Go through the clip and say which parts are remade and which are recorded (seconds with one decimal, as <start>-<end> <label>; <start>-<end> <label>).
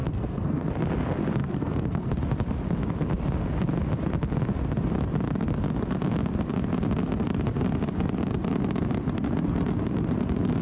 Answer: 0.0-0.7 remade; 0.7-1.4 recorded; 1.4-2.1 remade; 2.1-10.6 recorded